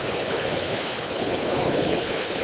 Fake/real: fake